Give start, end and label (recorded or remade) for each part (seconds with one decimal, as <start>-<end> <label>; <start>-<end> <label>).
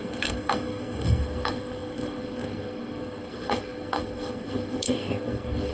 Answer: 0.0-5.7 remade